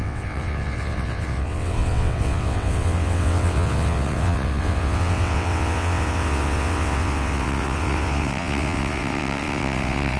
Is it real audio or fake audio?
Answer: fake